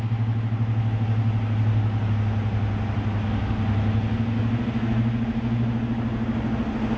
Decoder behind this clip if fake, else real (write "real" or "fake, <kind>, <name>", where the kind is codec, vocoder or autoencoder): real